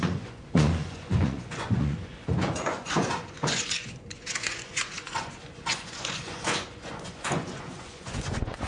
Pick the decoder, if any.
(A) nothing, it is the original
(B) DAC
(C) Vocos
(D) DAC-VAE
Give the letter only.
C